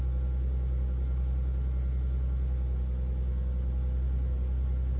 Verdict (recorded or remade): recorded